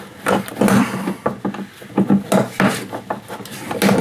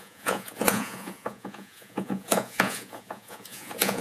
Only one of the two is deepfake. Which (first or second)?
second